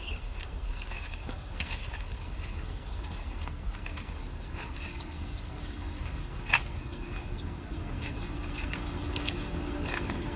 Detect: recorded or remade remade